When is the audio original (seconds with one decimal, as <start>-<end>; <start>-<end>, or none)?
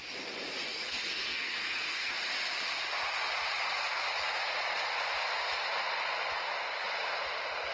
0.0-0.7; 2.1-7.7